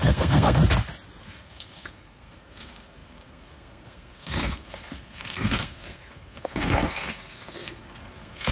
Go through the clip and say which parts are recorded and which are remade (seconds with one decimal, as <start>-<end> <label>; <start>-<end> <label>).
0.0-0.6 remade; 0.6-1.2 recorded; 1.2-8.5 remade